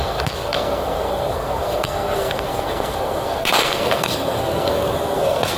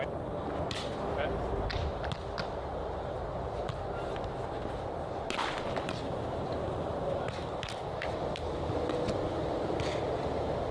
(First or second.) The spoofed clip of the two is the first